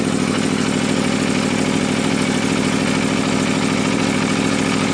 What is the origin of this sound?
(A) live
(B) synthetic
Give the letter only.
A